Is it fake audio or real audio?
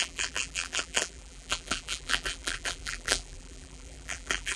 fake